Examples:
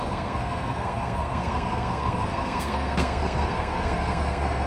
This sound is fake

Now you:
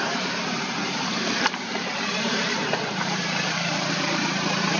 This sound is fake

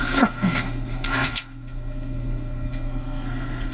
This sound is fake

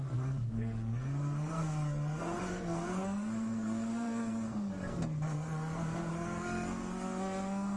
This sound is fake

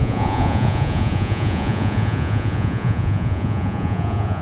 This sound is fake